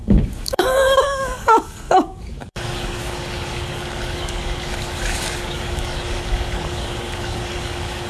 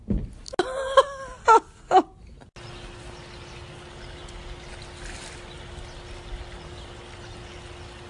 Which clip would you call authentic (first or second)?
second